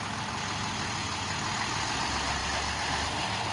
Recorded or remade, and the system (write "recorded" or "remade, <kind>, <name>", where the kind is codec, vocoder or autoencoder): recorded